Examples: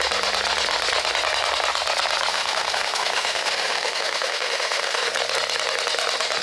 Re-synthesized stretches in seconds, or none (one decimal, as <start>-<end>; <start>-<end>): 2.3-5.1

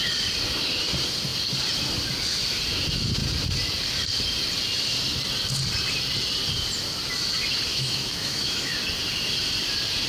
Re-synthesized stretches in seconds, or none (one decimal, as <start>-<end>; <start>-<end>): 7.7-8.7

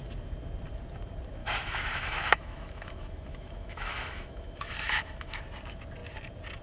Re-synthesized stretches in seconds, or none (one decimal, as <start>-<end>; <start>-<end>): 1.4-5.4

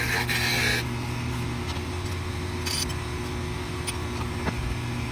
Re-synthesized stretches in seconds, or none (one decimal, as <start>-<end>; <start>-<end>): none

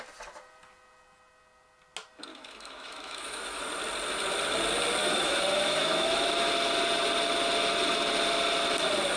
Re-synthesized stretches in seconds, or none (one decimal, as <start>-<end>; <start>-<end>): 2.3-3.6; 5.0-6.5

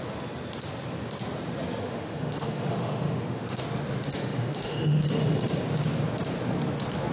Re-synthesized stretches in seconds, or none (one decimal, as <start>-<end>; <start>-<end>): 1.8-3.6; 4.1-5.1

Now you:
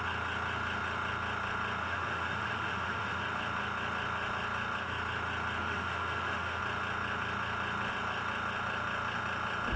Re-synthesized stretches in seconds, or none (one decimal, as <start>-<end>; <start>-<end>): 1.8-3.2; 5.6-6.6

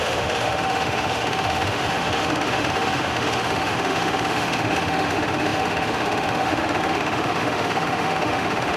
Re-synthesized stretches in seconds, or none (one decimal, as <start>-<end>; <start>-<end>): 0.0-8.8